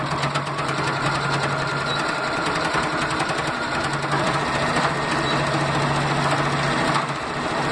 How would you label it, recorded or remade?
recorded